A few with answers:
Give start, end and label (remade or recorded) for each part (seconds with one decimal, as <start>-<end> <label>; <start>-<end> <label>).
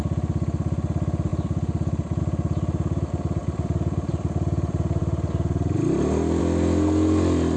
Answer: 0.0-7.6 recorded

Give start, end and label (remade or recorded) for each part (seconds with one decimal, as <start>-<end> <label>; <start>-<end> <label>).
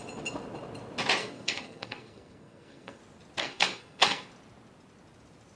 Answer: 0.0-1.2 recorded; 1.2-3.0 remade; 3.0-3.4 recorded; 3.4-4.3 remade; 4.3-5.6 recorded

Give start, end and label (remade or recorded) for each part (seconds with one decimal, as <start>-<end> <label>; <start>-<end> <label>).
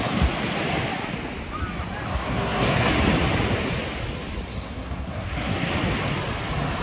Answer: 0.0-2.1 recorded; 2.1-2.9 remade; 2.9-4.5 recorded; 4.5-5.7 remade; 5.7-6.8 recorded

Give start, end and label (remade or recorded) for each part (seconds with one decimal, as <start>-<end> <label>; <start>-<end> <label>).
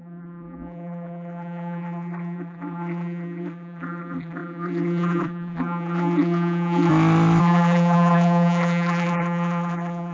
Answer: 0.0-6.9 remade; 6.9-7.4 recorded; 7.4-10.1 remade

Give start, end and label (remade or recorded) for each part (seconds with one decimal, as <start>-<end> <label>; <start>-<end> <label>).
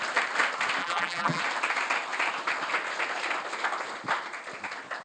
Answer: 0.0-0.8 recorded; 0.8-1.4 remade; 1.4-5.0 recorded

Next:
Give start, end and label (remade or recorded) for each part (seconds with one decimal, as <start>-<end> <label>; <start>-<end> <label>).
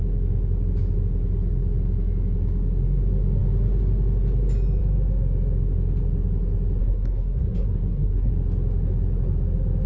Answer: 0.0-6.8 recorded; 6.8-8.3 remade; 8.3-9.9 recorded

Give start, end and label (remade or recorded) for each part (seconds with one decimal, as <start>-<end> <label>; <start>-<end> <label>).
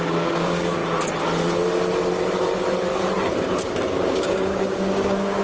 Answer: 0.0-0.8 remade; 0.8-3.9 recorded; 3.9-5.4 remade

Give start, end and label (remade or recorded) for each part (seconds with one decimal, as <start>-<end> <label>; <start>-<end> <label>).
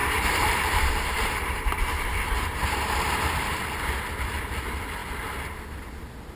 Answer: 0.0-3.8 remade; 3.8-6.4 recorded